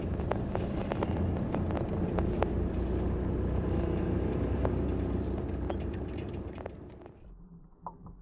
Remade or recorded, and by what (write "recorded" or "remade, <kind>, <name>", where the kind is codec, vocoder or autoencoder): remade, vocoder, BigVGAN v2